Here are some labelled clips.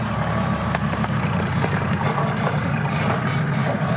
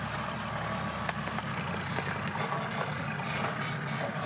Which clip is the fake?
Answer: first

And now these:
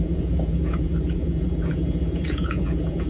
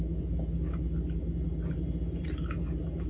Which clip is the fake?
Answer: first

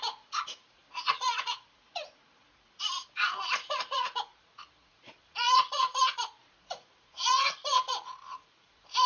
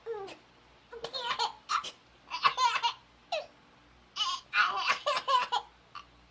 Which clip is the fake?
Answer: first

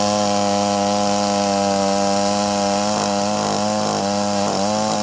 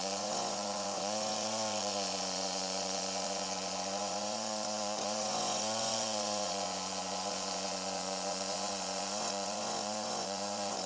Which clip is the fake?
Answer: second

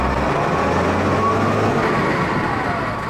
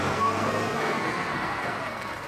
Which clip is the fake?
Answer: second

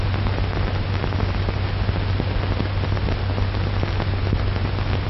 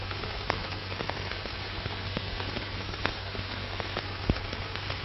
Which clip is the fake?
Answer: second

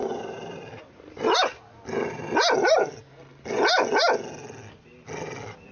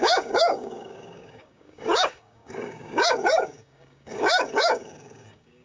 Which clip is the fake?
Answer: second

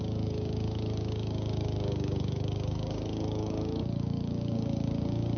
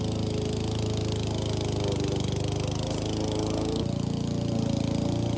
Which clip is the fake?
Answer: first